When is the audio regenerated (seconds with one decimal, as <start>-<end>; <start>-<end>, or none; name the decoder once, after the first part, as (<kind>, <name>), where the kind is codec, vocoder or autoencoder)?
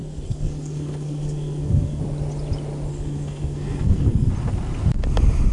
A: 0.0-2.0 (codec, SNAC); 2.9-4.3